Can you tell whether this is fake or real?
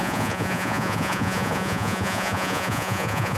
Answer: fake